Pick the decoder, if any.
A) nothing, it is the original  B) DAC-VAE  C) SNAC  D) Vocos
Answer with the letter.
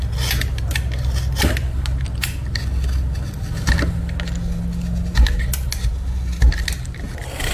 A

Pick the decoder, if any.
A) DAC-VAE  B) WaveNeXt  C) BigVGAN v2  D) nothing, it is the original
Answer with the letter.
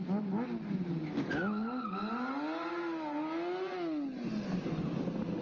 D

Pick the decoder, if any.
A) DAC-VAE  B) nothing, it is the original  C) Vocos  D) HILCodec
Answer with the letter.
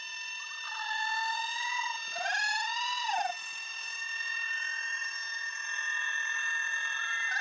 B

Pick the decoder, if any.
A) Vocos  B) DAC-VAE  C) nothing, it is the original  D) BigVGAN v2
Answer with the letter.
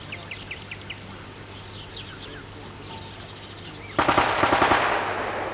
C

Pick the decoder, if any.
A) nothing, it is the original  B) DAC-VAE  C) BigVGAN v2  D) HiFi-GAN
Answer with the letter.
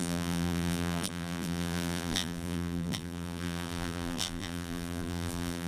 C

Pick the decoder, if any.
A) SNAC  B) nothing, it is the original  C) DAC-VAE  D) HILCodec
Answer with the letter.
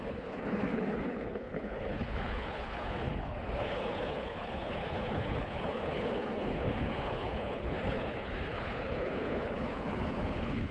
D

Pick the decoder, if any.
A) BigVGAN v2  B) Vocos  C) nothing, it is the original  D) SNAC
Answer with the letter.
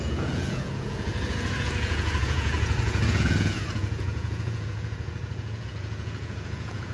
B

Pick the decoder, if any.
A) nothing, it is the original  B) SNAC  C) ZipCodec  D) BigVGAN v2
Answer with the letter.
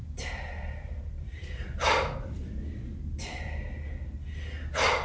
A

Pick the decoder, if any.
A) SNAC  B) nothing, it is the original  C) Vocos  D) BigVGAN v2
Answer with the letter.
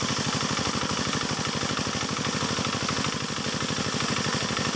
B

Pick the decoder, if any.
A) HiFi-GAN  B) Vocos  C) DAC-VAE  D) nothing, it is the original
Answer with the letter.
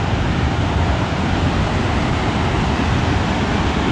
D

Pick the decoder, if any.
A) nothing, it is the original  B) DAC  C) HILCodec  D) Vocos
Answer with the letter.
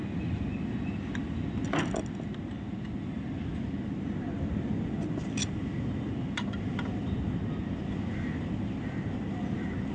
A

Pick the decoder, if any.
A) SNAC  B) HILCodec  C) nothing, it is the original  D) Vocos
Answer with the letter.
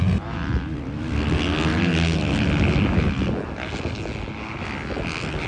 C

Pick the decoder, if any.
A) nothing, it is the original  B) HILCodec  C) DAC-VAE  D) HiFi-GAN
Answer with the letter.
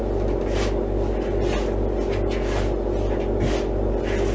A